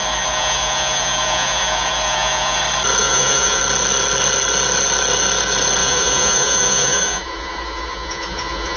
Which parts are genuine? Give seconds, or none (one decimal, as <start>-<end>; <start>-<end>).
2.6-3.0; 3.6-5.8